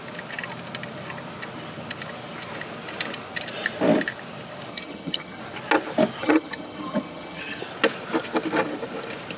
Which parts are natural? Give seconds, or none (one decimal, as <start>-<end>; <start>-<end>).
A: 0.0-4.7; 5.4-6.2; 7.6-9.4